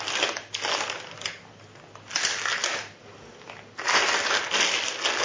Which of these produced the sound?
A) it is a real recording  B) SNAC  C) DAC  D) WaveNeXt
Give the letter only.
A